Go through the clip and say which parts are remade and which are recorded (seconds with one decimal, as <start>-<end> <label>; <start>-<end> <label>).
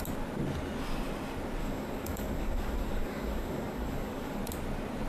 0.0-1.6 recorded; 1.6-4.4 remade; 4.4-5.1 recorded